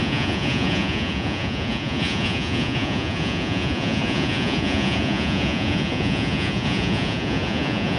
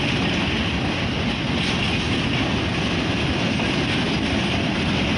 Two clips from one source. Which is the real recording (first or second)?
second